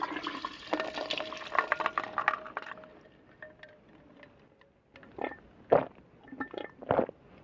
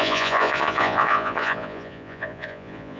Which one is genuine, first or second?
first